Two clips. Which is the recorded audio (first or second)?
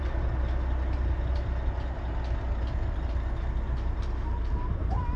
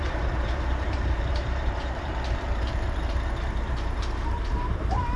first